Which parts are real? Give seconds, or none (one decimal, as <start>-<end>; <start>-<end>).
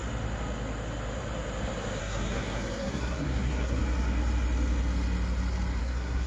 0.0-2.0; 3.8-5.8